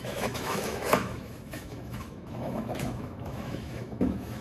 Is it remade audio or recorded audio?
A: remade